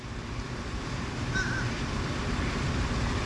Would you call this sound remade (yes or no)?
yes